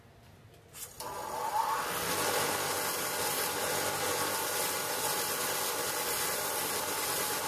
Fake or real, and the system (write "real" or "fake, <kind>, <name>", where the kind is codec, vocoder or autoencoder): real